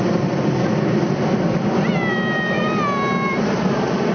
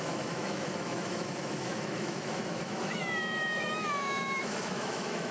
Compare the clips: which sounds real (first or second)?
first